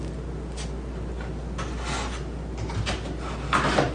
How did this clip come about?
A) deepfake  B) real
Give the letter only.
B